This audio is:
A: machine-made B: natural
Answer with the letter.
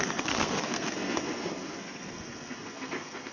A